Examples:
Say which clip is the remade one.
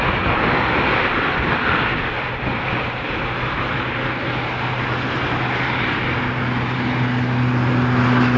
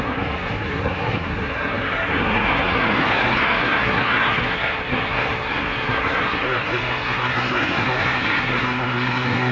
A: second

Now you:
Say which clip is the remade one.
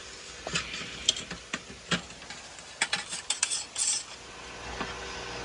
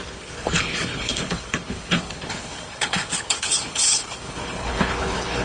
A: second